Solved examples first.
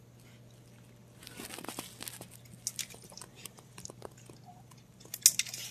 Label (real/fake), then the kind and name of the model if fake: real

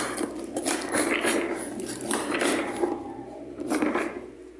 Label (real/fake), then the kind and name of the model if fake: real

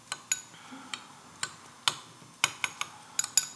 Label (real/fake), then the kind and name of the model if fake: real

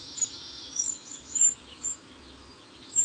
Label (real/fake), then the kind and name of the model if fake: fake, autoencoder, DAC-VAE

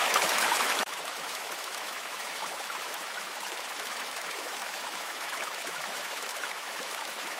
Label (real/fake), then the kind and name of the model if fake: fake, autoencoder, DAC-VAE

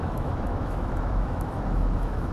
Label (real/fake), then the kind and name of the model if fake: fake, autoencoder, DAC-VAE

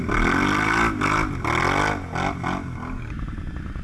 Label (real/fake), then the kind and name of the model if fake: real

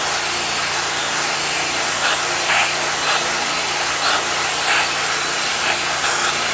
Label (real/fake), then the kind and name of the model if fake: real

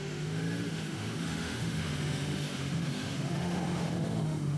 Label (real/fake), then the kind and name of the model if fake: fake, autoencoder, DAC-VAE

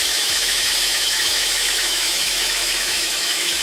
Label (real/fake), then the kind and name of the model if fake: fake, autoencoder, DAC-VAE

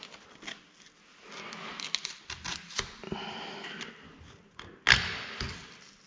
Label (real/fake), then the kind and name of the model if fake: real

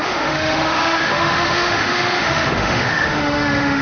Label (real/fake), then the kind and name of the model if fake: fake, autoencoder, DAC-VAE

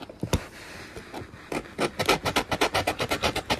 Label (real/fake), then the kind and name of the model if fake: real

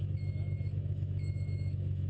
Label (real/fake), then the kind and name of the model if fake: fake, autoencoder, DAC-VAE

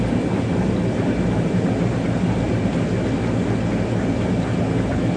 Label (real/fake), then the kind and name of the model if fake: real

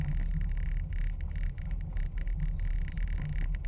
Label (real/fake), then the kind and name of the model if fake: real